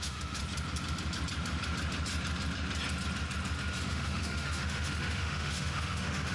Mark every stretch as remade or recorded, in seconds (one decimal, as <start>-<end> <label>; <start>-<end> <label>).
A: 0.0-0.4 remade; 0.4-3.8 recorded; 3.8-6.3 remade